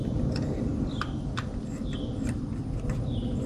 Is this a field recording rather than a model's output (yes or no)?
yes